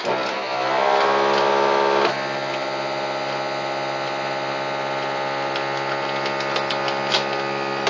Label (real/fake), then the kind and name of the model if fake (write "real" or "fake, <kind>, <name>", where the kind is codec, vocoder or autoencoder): real